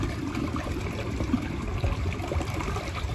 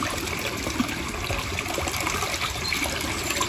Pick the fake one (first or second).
first